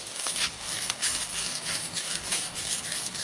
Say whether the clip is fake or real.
fake